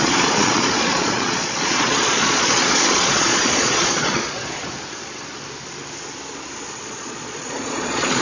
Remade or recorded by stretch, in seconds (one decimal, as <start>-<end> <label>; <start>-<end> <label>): 0.0-4.6 remade; 4.6-6.8 recorded; 6.8-8.2 remade